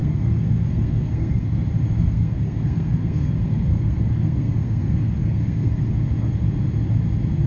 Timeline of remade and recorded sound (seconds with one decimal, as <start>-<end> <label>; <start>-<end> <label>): 0.0-1.6 remade; 1.6-2.0 recorded; 2.0-5.9 remade; 5.9-7.5 recorded